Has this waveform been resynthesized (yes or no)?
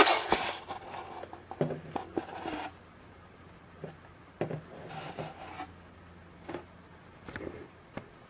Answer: no